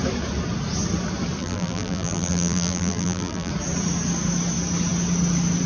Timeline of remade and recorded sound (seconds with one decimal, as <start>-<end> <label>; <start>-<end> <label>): 0.0-1.4 recorded; 1.4-3.5 remade; 3.5-5.7 recorded